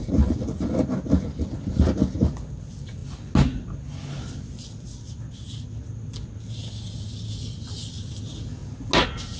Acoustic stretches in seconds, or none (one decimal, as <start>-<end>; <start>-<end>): 0.0-9.4